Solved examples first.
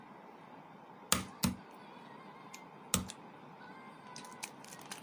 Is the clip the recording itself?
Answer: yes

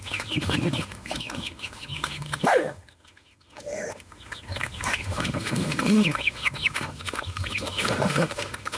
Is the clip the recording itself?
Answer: no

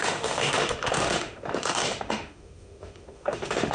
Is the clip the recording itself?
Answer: no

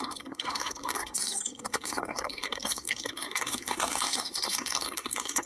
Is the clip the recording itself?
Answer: no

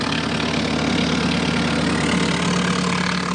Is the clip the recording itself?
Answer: yes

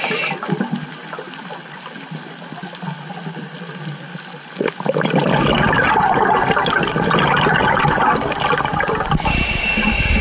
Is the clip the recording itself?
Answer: yes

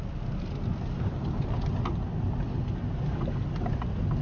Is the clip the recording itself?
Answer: yes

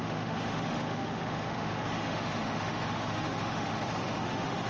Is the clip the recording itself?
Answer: no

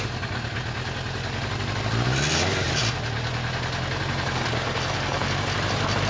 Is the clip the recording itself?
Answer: yes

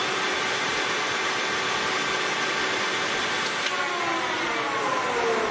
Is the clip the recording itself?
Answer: yes